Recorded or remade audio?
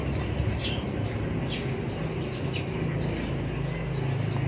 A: recorded